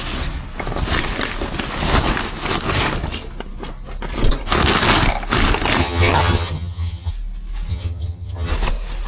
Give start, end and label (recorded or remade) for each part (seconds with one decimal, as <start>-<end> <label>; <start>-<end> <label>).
0.0-5.8 recorded; 5.8-7.1 remade; 7.1-7.7 recorded; 7.7-8.5 remade; 8.5-9.1 recorded